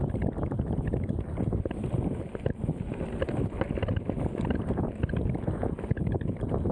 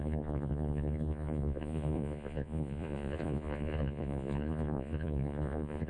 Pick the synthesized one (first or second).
second